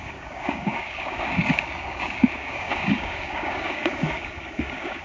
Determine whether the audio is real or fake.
fake